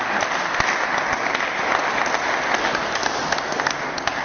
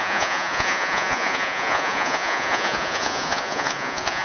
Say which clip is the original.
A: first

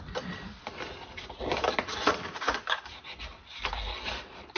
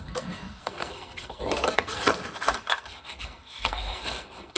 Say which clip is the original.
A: first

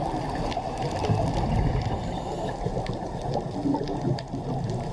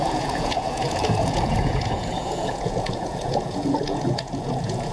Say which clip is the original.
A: first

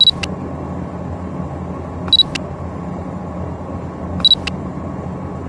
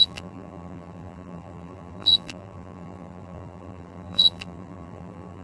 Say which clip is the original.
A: first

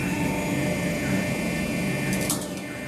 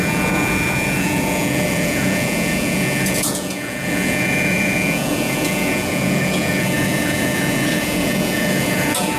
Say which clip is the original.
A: first